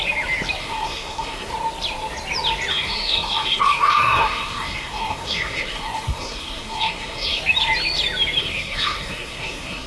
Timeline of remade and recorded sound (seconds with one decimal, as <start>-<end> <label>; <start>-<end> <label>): 0.0-0.6 recorded; 0.6-1.5 remade; 1.5-2.7 recorded; 2.7-7.4 remade; 7.4-8.4 recorded; 8.4-9.9 remade